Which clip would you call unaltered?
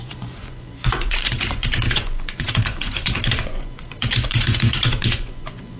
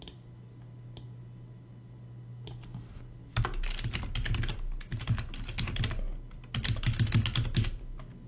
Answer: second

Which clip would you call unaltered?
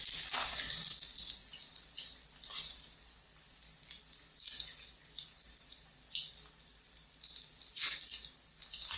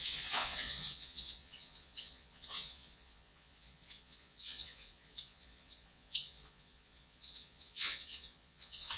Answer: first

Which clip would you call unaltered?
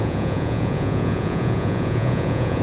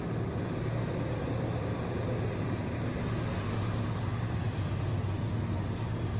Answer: second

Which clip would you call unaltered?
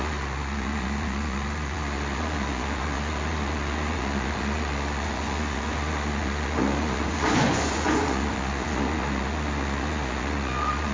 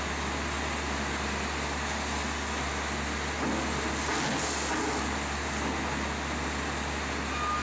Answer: second